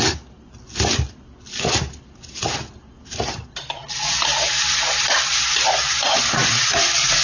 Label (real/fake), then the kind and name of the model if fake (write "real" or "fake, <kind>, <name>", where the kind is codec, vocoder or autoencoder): real